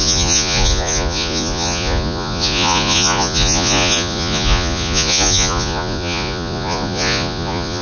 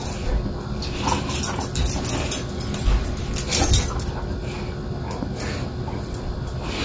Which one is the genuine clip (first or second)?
second